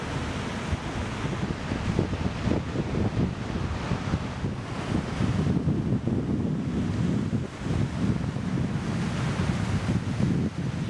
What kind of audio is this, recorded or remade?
recorded